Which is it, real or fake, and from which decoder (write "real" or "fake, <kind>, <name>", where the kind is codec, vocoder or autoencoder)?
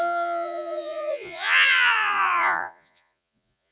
fake, vocoder, Vocos